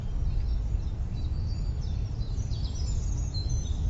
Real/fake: real